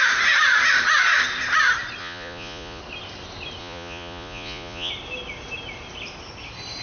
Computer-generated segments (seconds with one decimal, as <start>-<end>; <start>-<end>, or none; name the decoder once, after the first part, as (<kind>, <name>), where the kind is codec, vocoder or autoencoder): 2.0-2.8 (vocoder, Vocos); 3.6-4.9

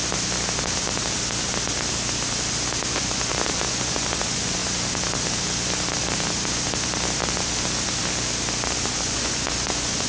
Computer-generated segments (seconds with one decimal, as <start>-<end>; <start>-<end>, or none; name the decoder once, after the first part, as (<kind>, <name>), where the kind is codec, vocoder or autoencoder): 2.9-4.6 (vocoder, Vocos); 9.0-10.1

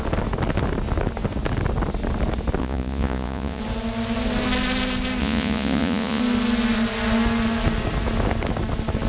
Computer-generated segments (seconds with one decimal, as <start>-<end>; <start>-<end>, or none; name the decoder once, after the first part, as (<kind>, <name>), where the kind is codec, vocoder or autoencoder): 2.6-3.6 (vocoder, Vocos); 5.2-6.2

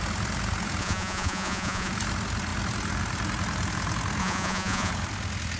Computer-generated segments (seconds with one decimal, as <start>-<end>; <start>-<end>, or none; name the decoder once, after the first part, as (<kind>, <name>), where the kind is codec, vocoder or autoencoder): 0.8-1.9 (vocoder, Vocos); 4.2-4.9

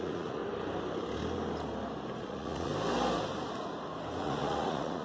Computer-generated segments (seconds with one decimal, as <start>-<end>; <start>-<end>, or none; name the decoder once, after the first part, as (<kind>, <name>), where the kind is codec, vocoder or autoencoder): 0.0-0.4 (vocoder, Vocos); 2.2-2.7; 4.2-5.0